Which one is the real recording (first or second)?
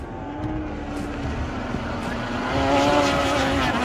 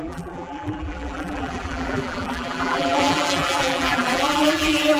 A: first